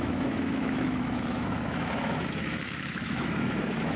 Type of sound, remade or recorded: remade